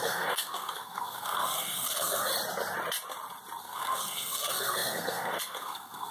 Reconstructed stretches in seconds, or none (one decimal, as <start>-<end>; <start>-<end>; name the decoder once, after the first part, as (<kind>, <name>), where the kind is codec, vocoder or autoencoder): 0.0-2.3 (codec, SNAC); 3.6-6.1